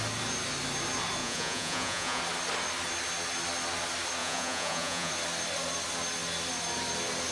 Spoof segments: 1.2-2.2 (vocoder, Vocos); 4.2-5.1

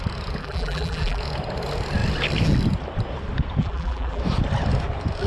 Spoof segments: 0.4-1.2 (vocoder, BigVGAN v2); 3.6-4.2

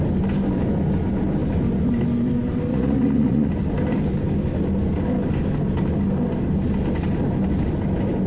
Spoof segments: 2.7-3.5 (vocoder, Vocos)